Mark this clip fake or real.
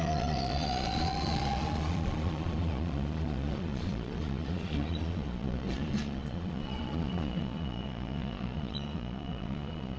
fake